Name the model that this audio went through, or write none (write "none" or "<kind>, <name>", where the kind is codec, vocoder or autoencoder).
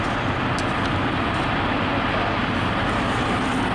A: none